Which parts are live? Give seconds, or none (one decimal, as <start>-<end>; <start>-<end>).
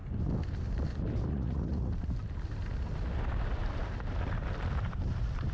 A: 0.0-1.3; 1.9-5.5